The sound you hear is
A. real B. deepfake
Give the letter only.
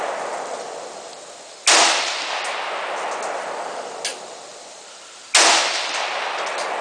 A